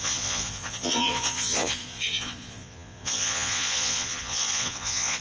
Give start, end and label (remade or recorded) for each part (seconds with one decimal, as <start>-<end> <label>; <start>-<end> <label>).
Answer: 0.0-5.2 remade